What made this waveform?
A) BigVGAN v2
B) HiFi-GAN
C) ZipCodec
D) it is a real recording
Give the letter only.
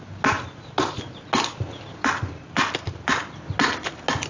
D